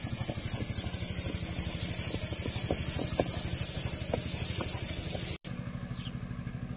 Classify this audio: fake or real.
real